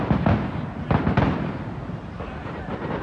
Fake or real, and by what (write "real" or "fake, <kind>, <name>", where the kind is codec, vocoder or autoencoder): real